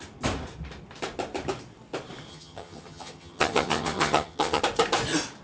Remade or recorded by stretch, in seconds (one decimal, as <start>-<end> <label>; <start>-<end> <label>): 0.0-2.3 recorded; 2.3-4.6 remade; 4.6-5.4 recorded